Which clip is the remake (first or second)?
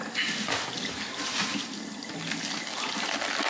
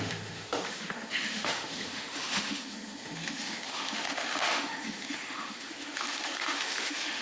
second